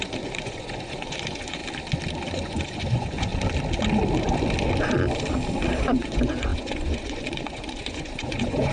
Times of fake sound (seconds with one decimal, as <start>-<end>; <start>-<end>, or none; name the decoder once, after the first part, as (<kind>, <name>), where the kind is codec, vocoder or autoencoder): 0.0-1.6 (vocoder, Vocos); 2.3-3.3; 5.8-8.7